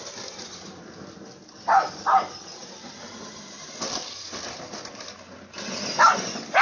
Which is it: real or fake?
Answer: real